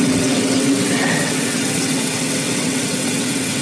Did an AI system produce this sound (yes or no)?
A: yes